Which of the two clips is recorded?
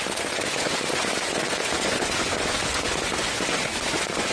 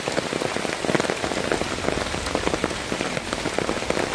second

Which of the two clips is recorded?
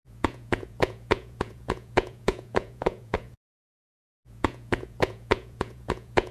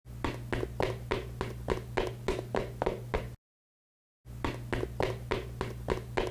second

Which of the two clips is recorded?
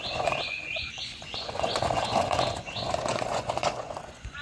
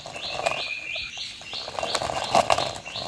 second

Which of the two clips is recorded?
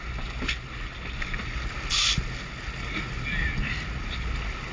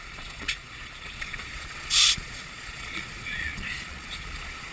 first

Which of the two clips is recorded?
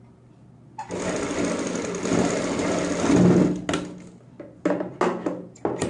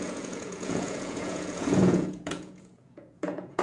first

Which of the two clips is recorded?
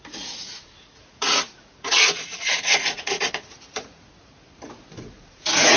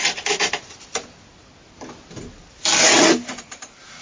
second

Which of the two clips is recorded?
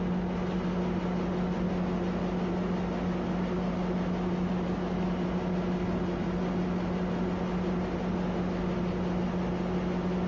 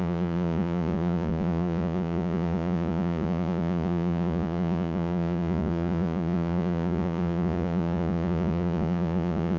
first